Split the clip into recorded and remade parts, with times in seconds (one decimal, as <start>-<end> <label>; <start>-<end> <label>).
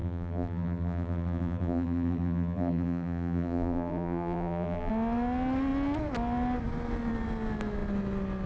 0.0-4.9 remade; 4.9-8.5 recorded